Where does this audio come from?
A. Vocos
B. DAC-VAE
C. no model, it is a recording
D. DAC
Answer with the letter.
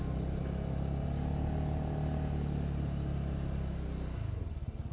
C